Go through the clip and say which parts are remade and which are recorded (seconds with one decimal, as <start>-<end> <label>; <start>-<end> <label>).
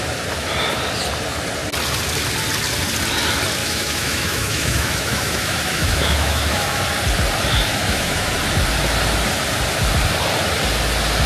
0.0-3.6 recorded; 3.6-6.8 remade; 6.8-7.7 recorded; 7.7-8.3 remade; 8.3-11.3 recorded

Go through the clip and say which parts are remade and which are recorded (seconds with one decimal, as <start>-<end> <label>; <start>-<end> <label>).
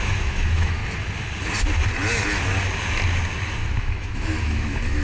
0.0-0.8 remade; 0.8-3.8 recorded; 3.8-5.0 remade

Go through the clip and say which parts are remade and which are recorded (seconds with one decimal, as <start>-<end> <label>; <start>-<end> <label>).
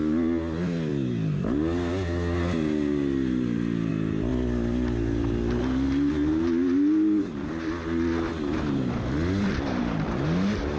0.0-10.8 recorded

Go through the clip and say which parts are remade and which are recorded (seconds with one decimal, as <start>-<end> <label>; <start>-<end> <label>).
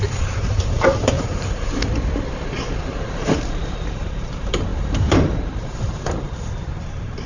0.0-7.3 remade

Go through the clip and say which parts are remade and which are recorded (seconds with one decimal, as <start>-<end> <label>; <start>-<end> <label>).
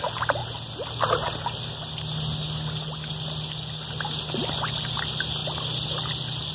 0.0-6.5 recorded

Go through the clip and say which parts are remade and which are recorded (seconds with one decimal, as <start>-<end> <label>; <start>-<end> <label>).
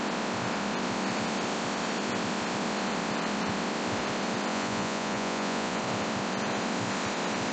0.0-4.5 recorded; 4.5-5.8 remade; 5.8-7.5 recorded